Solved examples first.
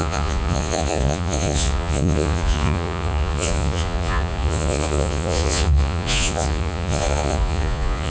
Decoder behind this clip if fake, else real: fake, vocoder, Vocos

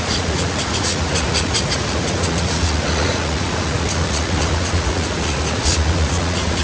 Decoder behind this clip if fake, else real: fake, vocoder, Vocos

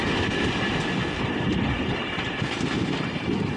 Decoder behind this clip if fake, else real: real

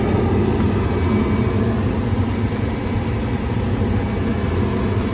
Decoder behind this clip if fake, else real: real